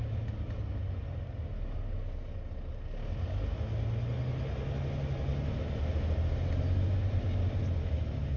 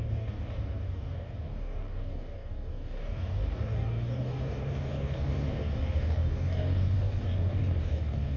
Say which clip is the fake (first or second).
second